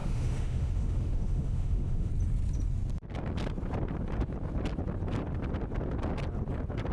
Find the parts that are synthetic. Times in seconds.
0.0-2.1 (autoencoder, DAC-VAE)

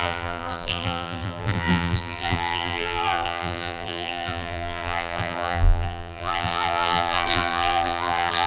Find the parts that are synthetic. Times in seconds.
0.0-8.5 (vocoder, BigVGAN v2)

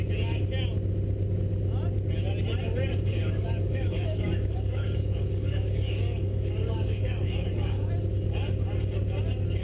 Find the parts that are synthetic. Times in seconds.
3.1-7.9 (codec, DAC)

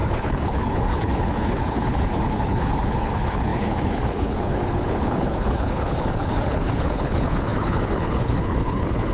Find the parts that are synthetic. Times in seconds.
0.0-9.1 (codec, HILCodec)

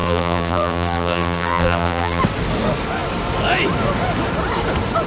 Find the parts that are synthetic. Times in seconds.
0.0-2.2 (vocoder, BigVGAN v2)

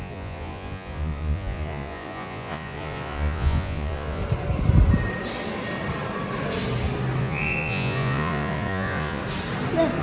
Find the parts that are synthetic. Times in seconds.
0.0-4.2 (vocoder, Vocos); 7.2-9.2

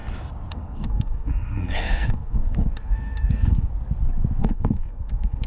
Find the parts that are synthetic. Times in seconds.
0.5-3.7 (codec, SNAC); 4.4-5.5